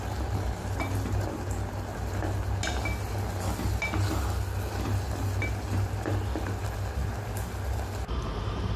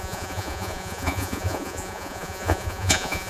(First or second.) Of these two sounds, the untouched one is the first